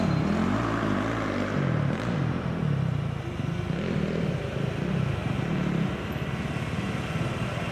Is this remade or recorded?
recorded